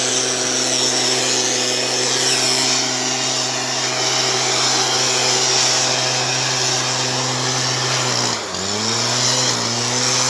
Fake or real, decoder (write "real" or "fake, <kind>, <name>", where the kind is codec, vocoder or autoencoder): real